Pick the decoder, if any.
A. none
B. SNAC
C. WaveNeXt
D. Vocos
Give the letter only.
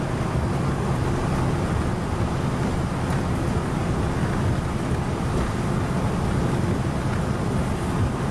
A